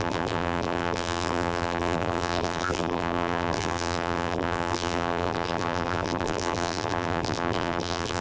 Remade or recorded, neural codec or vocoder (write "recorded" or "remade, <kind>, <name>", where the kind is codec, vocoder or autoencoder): remade, vocoder, BigVGAN v2